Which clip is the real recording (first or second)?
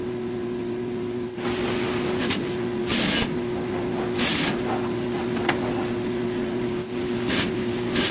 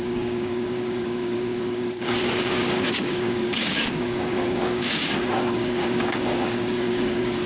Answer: first